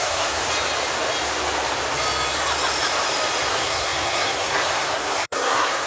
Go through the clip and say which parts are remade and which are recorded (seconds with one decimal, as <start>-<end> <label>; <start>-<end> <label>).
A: 0.0-0.4 remade; 0.4-3.5 recorded; 3.5-5.9 remade